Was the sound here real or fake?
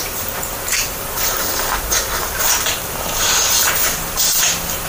fake